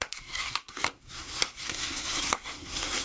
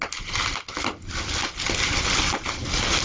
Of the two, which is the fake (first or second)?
first